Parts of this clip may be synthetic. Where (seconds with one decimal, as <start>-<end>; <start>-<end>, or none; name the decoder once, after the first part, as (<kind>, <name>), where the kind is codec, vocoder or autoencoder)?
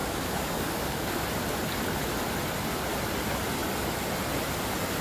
0.0-1.2 (codec, DAC)